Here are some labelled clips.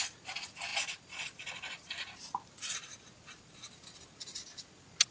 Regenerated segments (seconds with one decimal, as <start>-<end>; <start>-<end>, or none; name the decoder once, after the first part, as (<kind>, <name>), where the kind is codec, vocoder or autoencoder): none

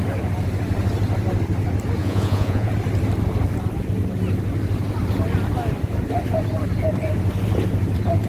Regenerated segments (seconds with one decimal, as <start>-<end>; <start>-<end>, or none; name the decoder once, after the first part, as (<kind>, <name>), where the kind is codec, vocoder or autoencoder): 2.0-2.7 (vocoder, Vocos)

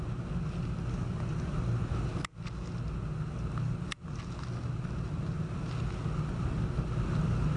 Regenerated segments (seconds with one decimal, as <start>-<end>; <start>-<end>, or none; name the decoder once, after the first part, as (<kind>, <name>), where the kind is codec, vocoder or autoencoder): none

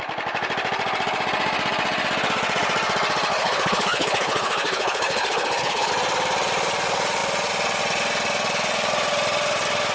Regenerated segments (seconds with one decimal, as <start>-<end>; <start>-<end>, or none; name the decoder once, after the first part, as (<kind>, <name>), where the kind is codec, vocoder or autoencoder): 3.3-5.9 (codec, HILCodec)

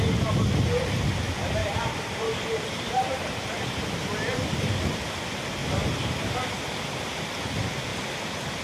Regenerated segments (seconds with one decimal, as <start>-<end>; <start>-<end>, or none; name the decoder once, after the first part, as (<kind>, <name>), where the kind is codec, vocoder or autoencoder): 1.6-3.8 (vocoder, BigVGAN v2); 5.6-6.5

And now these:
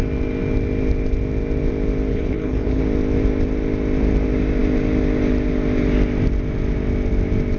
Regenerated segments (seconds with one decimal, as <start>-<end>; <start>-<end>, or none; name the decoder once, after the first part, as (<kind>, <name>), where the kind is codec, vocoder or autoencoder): 2.1-2.8 (codec, HILCodec)